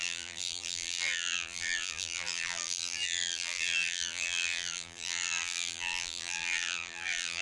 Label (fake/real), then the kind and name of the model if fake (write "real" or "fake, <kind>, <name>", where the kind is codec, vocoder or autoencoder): fake, vocoder, BigVGAN v2